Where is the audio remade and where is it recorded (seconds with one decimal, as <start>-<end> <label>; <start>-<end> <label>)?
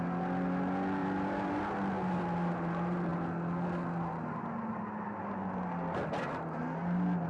0.0-1.0 recorded; 1.0-1.6 remade; 1.6-7.3 recorded